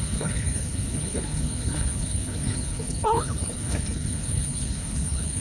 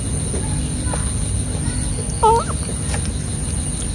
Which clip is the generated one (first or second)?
first